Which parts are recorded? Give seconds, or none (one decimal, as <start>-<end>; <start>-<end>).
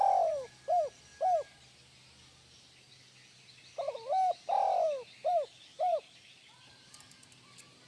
1.1-5.8